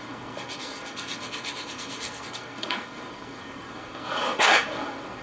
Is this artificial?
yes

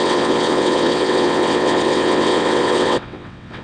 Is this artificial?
yes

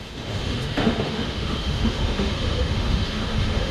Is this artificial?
yes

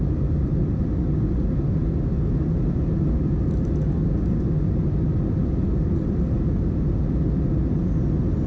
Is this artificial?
no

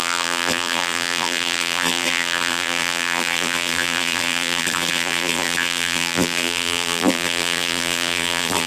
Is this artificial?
yes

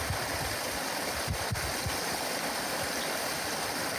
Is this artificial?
no